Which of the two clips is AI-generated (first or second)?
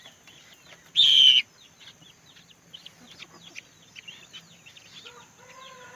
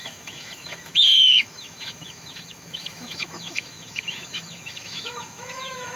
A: second